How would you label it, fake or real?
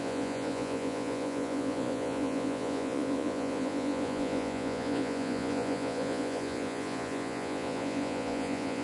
fake